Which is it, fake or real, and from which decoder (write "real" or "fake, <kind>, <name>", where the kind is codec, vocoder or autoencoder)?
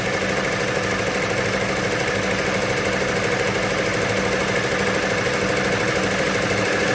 real